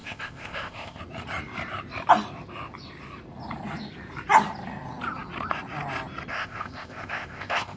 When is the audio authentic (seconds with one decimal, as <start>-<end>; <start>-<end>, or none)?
1.0-6.3

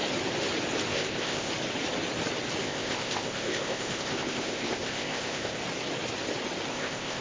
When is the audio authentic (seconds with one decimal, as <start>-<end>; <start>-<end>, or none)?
0.0-0.9; 1.5-2.6; 5.6-6.7

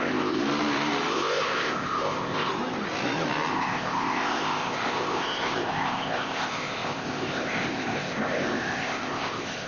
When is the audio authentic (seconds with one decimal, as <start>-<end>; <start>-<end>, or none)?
0.4-1.1; 2.5-3.5

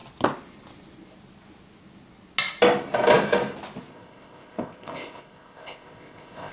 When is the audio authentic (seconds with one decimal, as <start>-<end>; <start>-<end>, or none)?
0.0-3.9

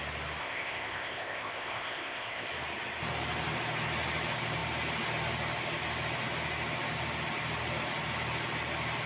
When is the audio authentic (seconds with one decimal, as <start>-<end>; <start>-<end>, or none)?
0.0-0.4; 2.5-9.1

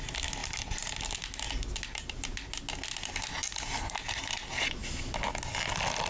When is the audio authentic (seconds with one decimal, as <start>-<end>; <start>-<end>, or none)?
0.0-6.1